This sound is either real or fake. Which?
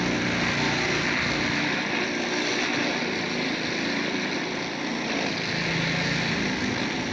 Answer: real